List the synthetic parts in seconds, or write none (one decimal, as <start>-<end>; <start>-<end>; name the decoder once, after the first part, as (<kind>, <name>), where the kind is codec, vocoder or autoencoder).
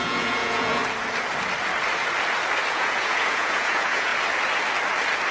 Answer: 0.0-0.8 (vocoder, Vocos); 2.7-4.1